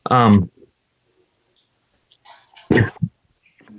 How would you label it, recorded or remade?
recorded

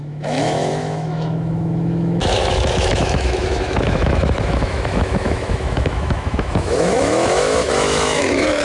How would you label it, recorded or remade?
remade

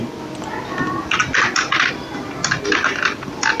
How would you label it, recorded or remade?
recorded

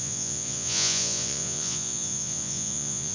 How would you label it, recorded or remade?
remade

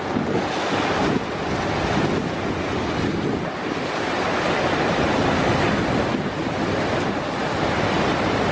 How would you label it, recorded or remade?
recorded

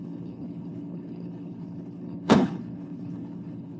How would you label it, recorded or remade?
remade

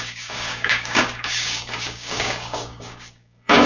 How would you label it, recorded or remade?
remade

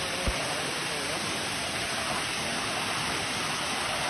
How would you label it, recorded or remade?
recorded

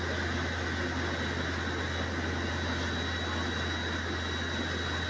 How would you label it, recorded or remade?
recorded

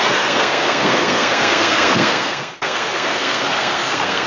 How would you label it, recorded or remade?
remade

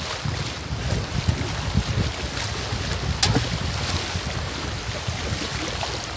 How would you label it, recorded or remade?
recorded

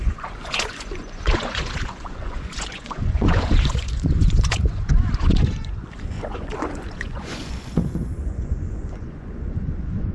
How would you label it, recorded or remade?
remade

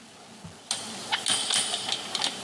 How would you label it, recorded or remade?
recorded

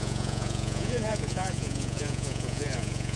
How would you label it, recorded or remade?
remade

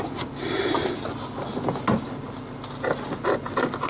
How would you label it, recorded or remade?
recorded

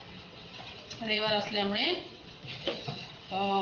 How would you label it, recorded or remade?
remade